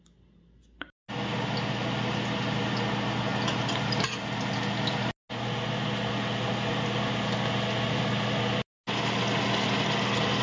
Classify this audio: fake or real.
real